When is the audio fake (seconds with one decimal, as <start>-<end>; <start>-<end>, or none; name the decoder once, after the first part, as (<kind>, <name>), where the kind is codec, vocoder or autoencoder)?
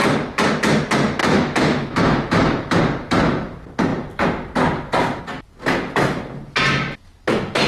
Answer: 1.2-2.8 (autoencoder, DAC-VAE)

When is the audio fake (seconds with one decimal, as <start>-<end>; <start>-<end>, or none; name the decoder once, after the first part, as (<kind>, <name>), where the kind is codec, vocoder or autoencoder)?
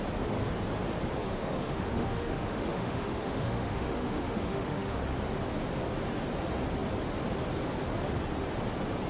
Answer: 1.2-5.0 (autoencoder, DAC-VAE)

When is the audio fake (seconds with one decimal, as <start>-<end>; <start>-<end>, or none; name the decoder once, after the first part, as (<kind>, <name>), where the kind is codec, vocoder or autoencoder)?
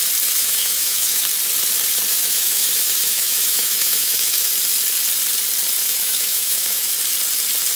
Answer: 0.4-1.2 (autoencoder, DAC-VAE); 2.1-4.5; 5.8-6.9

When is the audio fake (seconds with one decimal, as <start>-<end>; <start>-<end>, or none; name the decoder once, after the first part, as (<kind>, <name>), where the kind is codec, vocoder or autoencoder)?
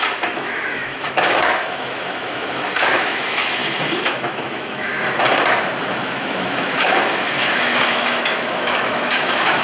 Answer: 0.0-3.6 (autoencoder, DAC-VAE); 4.1-4.9; 5.9-9.6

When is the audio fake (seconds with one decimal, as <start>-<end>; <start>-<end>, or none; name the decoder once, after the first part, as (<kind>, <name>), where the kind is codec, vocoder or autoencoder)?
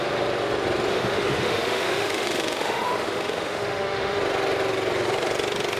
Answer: 0.9-4.2 (autoencoder, DAC-VAE)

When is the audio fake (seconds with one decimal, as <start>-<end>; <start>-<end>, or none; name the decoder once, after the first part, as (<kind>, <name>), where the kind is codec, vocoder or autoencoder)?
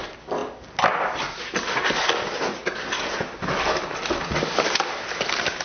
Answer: none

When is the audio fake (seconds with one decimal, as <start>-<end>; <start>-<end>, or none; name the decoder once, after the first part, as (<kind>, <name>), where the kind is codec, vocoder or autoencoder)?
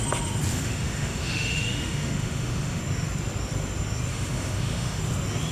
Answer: 0.5-2.8 (autoencoder, DAC-VAE); 4.1-5.0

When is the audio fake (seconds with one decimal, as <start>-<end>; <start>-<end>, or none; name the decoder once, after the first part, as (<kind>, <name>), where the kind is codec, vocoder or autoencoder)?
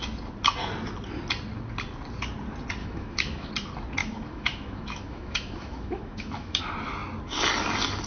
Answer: 2.8-3.5 (autoencoder, DAC-VAE); 4.0-6.6